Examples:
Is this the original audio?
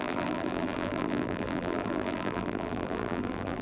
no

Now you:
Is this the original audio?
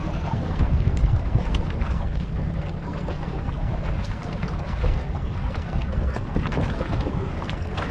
no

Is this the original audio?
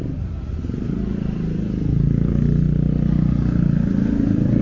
yes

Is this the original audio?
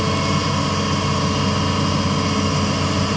yes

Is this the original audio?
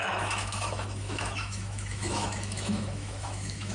no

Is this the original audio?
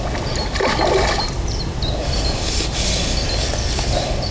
yes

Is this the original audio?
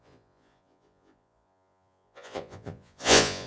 no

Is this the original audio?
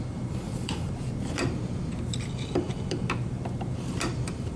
no